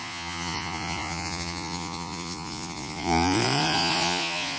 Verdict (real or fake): fake